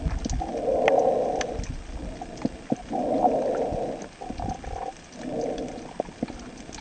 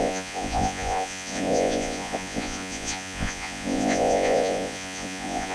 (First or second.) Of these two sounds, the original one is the first